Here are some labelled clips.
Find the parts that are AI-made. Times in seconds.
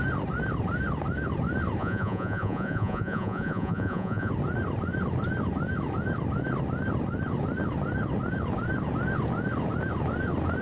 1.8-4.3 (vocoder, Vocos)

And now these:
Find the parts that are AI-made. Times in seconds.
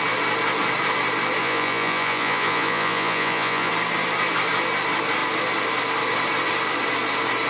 1.4-3.7 (vocoder, Vocos)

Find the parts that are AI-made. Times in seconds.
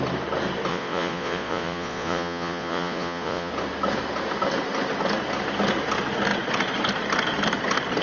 0.7-3.5 (vocoder, Vocos)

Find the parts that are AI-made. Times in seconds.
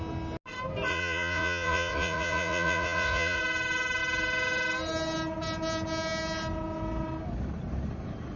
0.9-3.4 (vocoder, Vocos)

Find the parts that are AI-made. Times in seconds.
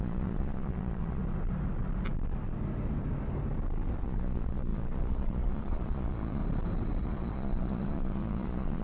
0.0-1.2 (vocoder, Vocos); 4.0-6.4; 7.0-8.8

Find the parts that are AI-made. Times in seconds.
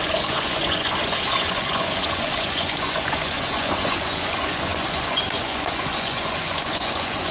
0.0-7.3 (vocoder, Vocos)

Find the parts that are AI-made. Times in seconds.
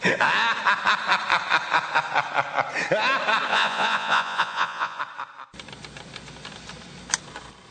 3.5-5.0 (vocoder, Vocos)